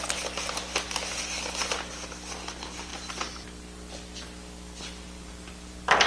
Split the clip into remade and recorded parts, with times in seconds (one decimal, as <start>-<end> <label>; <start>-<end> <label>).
0.0-6.1 recorded